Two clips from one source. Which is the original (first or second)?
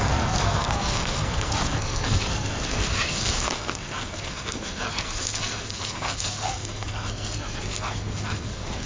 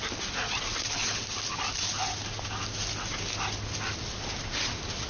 second